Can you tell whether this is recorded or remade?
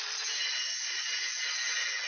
recorded